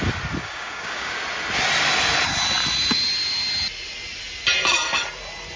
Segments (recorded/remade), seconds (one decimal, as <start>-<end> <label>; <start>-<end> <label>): 0.0-0.4 recorded; 0.4-1.1 remade; 1.1-5.6 recorded